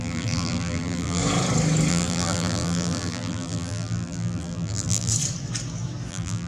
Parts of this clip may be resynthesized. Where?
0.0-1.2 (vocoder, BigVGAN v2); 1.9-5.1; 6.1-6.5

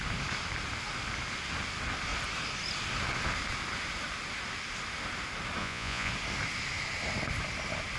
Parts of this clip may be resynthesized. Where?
5.6-6.1 (vocoder, Vocos)

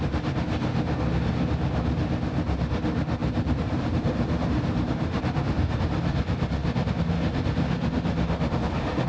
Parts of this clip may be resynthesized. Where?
3.2-5.8 (vocoder, BigVGAN v2)

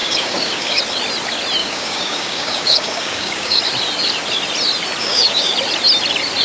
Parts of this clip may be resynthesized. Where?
0.0-0.8 (codec, DAC); 1.6-3.6; 5.0-5.5

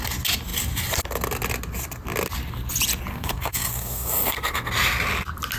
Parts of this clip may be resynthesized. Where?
3.1-4.7 (codec, SNAC)

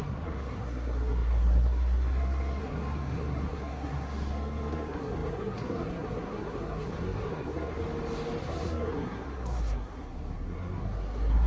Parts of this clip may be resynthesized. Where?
0.0-7.8 (codec, SNAC); 8.4-11.5

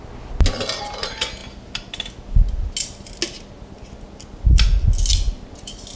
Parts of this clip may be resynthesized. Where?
none